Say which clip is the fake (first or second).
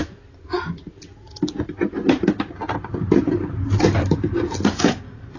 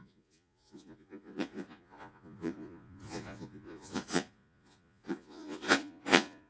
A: second